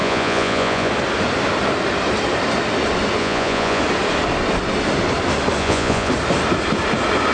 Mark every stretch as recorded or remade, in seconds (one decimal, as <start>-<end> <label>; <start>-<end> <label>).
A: 0.0-0.9 remade; 0.9-3.2 recorded; 3.2-3.8 remade; 3.8-5.6 recorded; 5.6-6.1 remade; 6.1-7.3 recorded